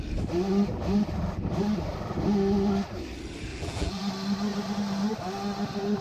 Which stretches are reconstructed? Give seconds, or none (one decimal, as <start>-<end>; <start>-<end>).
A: 3.5-4.0